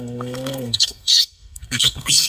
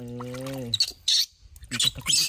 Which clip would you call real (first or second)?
second